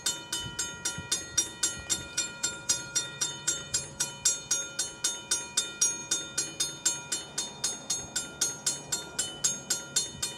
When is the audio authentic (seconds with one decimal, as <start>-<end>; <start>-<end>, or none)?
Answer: 0.0-1.9; 4.1-10.4